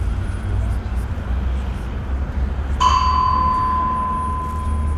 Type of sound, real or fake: real